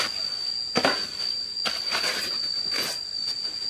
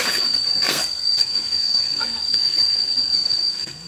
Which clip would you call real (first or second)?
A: first